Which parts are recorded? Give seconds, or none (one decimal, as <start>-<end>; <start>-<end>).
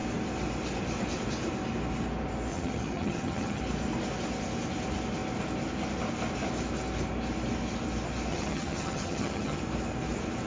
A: 0.0-2.5; 3.6-8.3; 9.6-10.5